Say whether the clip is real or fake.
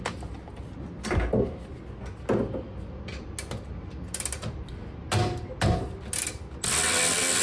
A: real